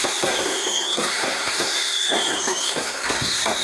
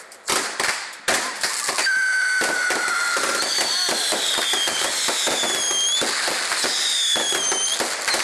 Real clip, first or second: second